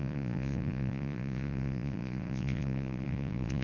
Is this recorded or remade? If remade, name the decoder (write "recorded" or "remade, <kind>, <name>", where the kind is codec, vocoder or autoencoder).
remade, vocoder, Vocos